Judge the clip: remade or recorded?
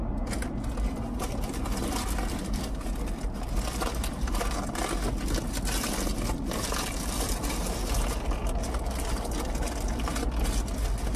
recorded